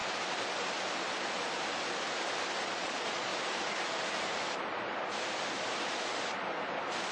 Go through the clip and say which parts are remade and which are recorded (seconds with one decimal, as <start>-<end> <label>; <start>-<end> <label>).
0.0-2.6 recorded; 2.6-3.3 remade; 3.3-7.1 recorded